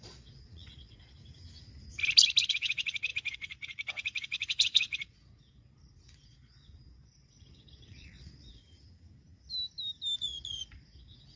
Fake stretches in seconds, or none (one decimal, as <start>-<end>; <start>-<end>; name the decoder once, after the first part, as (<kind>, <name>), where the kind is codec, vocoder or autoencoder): 0.0-1.2 (vocoder, Vocos); 2.5-8.6; 10.2-11.4